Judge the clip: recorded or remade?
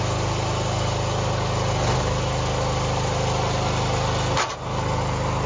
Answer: recorded